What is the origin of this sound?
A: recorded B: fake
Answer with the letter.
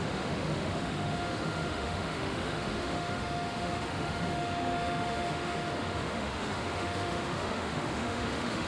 B